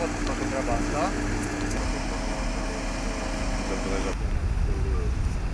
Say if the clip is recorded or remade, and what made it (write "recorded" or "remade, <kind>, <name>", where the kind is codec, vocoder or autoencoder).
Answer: recorded